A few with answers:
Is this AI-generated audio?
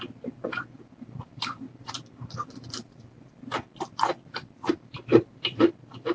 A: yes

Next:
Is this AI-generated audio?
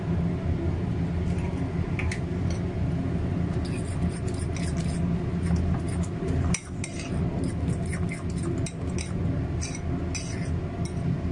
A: no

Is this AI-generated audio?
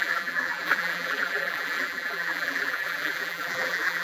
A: yes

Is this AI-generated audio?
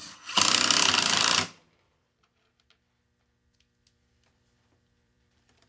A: yes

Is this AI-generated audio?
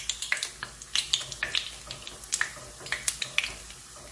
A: no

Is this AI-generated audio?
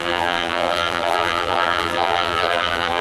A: yes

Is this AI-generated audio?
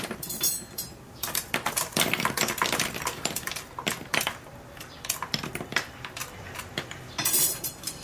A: yes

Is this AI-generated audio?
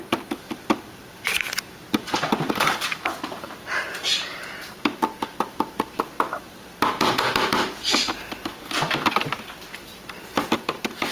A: yes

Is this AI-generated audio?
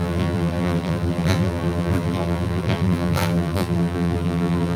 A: yes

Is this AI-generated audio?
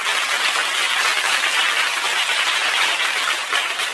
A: yes